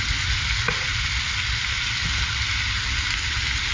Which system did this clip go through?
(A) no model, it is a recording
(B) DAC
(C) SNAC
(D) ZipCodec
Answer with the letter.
A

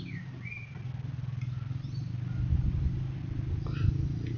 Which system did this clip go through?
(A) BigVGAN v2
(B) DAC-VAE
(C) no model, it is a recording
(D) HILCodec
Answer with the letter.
C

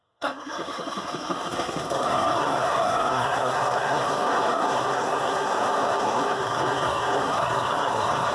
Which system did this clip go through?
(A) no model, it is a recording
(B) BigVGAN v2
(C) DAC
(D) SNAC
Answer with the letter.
D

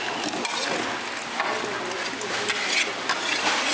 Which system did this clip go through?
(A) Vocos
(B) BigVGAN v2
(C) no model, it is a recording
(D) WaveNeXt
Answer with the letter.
C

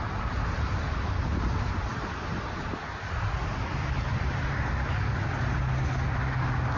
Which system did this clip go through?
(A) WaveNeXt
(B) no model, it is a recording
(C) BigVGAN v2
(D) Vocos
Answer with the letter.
B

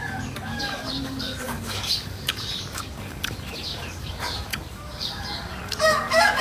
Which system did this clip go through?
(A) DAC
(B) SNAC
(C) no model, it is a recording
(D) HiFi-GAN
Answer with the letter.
A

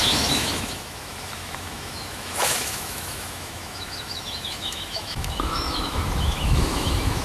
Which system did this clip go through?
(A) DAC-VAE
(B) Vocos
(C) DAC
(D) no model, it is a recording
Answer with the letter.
A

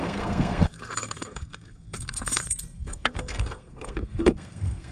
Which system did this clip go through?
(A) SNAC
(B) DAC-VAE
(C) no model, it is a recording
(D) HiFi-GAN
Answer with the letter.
A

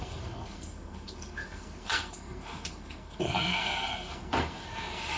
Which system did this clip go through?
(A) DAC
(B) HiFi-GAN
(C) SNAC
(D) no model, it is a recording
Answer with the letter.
C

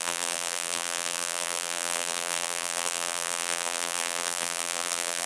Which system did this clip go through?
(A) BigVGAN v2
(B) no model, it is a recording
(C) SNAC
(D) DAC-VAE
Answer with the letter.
A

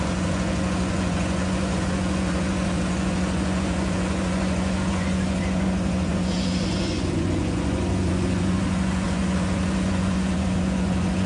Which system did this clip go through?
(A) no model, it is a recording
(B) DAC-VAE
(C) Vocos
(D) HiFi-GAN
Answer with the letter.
C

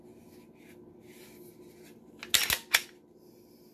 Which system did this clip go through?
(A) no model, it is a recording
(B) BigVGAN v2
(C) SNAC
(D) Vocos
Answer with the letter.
A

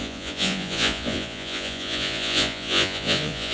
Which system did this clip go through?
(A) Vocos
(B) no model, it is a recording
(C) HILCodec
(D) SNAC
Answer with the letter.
A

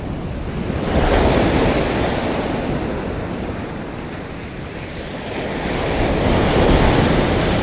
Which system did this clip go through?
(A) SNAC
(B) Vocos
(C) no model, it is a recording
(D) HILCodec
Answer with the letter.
C